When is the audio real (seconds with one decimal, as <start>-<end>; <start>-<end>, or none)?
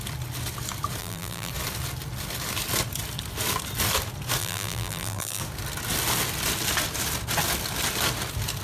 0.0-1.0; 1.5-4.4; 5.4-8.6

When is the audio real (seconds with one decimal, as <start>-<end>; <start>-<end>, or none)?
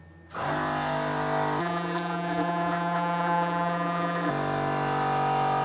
0.0-1.6; 4.3-5.6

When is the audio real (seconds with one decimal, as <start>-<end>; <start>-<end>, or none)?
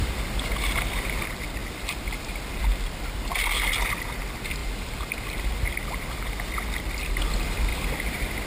0.0-7.7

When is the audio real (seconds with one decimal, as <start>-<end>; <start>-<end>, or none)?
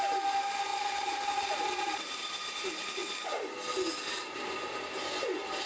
0.0-5.7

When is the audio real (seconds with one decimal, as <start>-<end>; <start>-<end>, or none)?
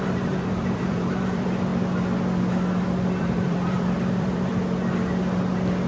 1.7-3.2; 4.5-5.9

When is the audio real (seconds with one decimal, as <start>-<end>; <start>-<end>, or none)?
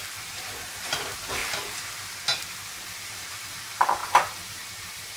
1.4-2.9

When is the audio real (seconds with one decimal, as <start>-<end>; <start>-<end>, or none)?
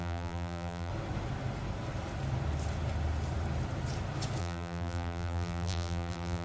0.9-4.4